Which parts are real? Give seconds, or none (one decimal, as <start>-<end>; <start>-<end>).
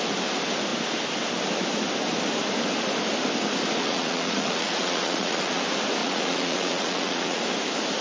0.0-3.8; 5.6-6.0; 7.4-8.0